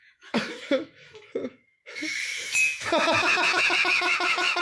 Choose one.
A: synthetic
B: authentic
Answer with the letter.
A